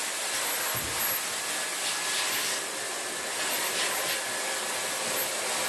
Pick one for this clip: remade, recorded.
recorded